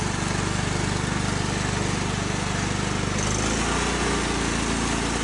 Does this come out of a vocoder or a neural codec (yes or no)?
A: no